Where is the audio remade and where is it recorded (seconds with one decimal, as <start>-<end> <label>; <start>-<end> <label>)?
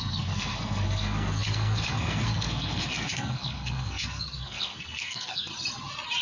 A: 0.0-5.5 remade; 5.5-6.2 recorded